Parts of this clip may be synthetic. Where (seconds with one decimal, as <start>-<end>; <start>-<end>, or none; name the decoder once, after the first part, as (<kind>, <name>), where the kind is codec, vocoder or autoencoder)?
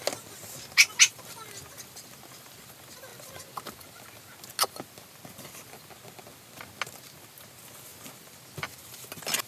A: none